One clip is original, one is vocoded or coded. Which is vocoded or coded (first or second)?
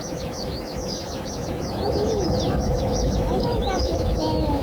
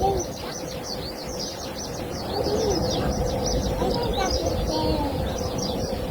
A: first